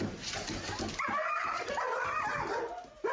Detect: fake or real real